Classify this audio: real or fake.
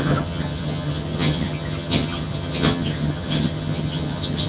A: fake